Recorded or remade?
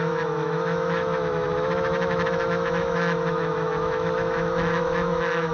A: remade